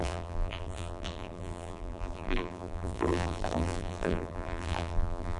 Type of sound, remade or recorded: remade